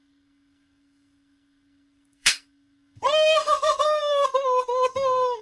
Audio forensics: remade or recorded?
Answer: remade